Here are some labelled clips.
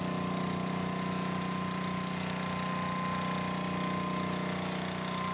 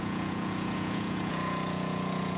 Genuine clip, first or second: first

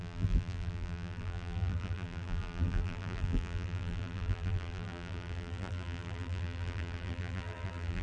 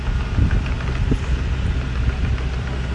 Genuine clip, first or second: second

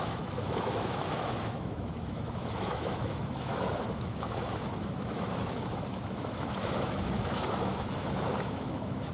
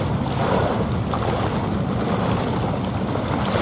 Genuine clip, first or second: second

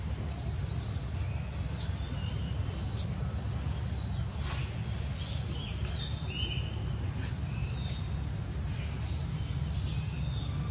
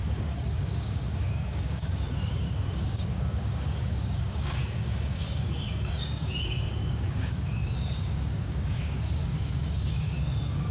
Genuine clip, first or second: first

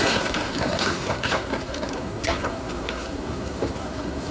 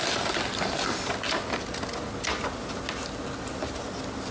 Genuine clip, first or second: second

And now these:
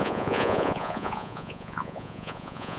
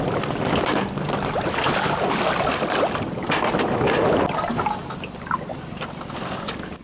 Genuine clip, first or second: second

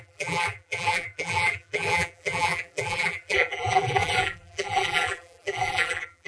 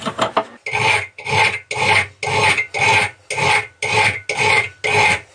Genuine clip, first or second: second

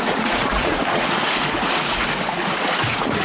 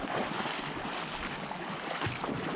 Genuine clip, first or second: second